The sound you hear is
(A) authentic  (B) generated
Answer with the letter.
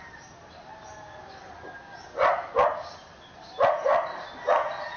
A